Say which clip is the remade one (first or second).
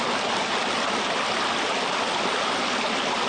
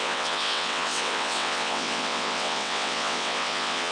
second